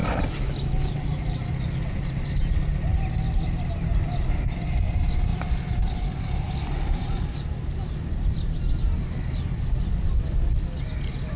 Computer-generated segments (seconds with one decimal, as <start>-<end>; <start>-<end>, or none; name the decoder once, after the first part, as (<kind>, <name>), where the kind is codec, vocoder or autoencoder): none